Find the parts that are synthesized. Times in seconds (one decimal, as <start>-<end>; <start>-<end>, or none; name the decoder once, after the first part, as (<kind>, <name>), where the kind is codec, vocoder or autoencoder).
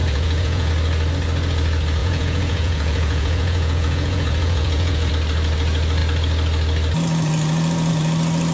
0.0-0.7 (vocoder, Vocos); 2.0-5.1